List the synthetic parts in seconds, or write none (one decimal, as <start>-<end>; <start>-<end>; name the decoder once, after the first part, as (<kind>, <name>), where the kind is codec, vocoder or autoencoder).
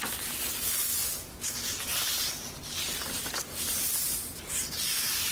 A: none